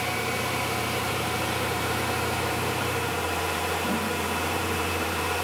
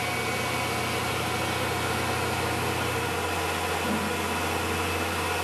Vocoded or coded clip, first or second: first